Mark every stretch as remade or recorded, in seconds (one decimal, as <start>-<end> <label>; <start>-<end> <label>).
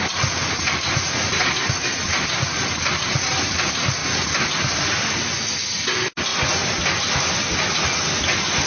0.0-8.7 recorded